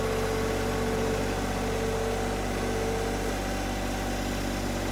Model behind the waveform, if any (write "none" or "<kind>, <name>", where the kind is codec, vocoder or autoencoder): none